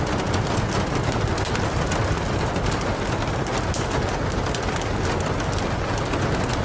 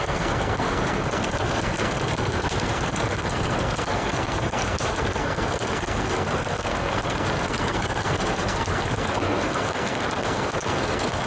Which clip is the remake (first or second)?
second